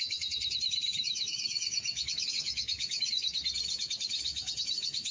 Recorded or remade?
remade